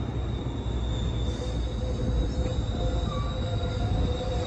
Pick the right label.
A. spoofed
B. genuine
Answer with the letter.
B